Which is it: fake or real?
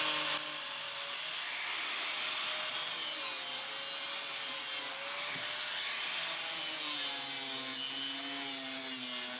real